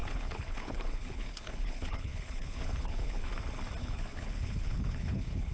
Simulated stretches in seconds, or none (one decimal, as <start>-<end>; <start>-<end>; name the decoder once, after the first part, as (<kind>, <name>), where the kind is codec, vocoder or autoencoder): 0.0-3.3 (codec, HILCodec); 3.8-5.5